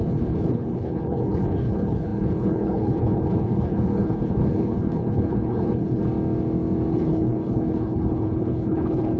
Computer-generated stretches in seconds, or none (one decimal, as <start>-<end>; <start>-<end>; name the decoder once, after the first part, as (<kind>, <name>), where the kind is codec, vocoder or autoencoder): 0.0-6.0 (codec, HILCodec); 6.9-9.2